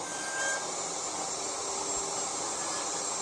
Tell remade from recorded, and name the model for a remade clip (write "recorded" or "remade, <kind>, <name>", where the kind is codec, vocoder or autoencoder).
recorded